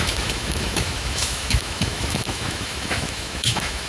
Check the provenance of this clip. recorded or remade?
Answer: remade